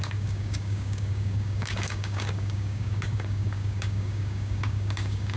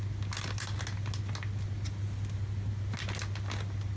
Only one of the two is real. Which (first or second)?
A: second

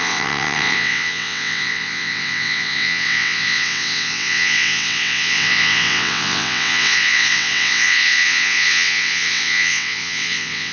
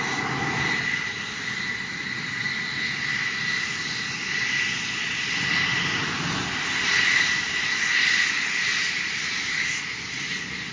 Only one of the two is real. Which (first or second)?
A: second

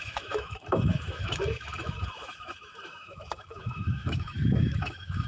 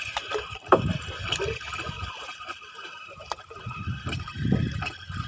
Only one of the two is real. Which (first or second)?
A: second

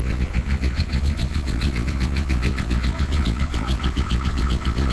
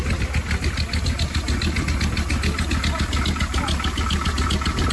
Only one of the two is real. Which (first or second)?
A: second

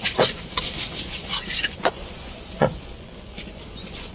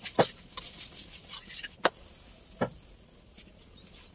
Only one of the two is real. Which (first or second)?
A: second